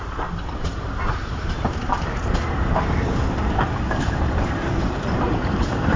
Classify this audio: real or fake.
fake